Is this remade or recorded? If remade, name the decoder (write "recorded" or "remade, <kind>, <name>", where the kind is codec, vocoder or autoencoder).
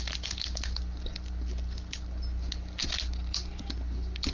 recorded